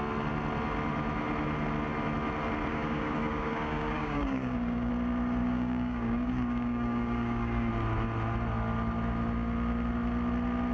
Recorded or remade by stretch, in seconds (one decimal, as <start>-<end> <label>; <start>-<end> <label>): 0.0-2.7 recorded; 2.7-4.9 remade; 4.9-5.4 recorded; 5.4-7.7 remade; 7.7-10.7 recorded

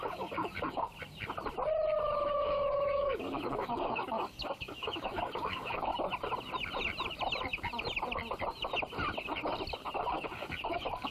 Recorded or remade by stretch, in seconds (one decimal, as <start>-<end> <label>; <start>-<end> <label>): 0.0-0.9 remade; 0.9-2.3 recorded; 2.3-5.9 remade; 5.9-10.1 recorded; 10.1-11.1 remade

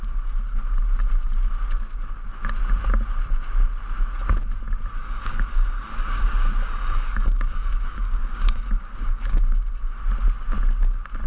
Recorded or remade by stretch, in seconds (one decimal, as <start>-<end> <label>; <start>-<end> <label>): 0.0-4.9 recorded; 4.9-9.4 remade; 9.4-11.3 recorded

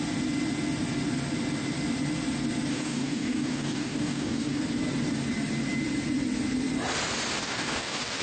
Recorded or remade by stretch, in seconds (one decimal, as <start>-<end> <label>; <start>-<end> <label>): 0.0-2.7 recorded; 2.7-4.6 remade; 4.6-7.4 recorded; 7.4-8.2 remade